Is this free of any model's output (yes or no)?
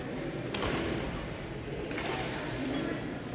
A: yes